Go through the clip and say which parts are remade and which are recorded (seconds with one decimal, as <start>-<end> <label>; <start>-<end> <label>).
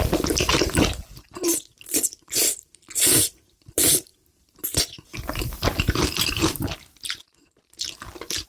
0.0-8.5 recorded